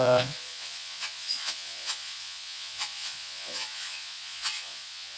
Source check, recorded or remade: remade